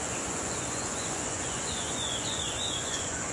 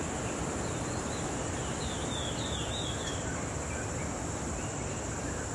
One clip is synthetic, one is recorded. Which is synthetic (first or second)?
first